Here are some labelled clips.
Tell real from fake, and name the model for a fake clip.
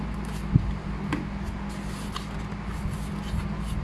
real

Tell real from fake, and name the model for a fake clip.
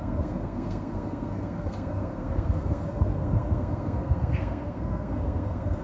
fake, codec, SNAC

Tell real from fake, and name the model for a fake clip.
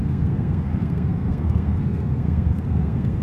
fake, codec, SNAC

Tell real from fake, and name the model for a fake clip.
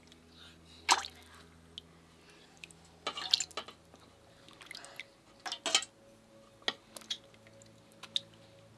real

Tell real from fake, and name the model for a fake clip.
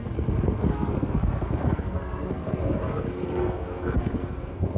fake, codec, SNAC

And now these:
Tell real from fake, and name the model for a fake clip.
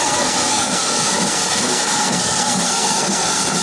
fake, codec, SNAC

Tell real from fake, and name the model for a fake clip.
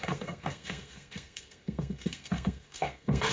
fake, codec, SNAC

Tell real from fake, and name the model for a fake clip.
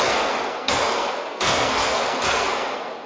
fake, codec, SNAC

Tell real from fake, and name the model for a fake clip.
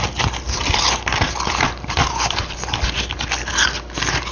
real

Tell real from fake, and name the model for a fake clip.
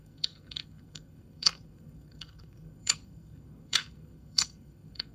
fake, codec, SNAC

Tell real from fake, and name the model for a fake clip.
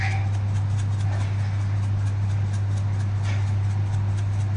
real